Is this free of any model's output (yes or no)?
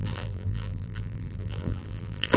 no